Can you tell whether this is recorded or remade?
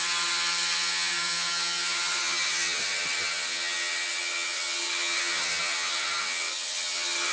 remade